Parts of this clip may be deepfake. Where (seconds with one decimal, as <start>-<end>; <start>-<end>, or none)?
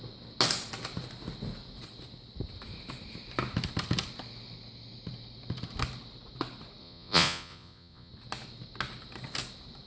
6.8-8.1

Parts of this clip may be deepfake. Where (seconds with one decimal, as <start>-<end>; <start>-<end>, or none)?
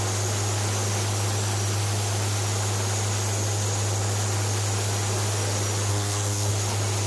5.9-6.5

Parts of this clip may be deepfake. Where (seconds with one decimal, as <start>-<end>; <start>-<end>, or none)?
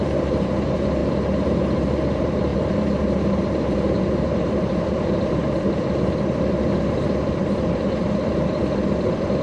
0.0-1.0; 1.6-9.4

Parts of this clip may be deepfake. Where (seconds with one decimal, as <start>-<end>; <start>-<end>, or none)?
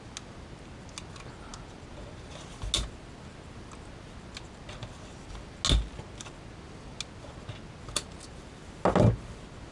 none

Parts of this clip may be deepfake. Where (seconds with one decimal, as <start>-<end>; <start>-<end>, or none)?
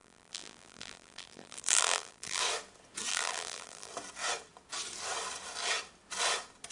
0.0-2.4; 3.1-3.9